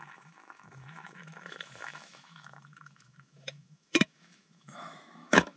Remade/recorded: remade